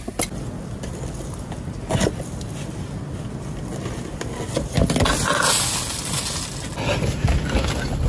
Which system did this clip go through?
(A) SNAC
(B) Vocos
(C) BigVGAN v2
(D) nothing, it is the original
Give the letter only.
D